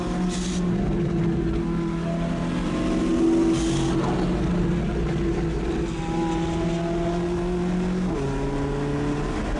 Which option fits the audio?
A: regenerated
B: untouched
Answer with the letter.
B